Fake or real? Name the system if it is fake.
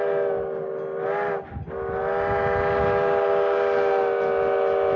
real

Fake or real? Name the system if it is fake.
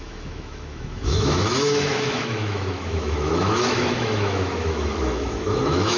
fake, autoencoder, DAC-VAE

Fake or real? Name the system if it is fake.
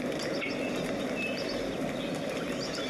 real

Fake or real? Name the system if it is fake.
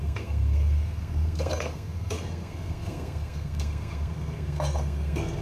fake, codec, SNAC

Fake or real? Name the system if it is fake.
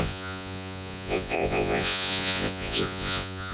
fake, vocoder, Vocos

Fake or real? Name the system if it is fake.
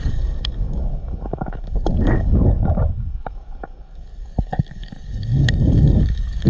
fake, codec, DAC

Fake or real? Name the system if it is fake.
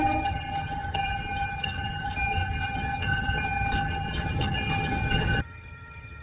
fake, vocoder, HiFi-GAN